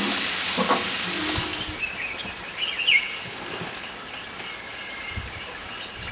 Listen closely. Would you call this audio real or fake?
real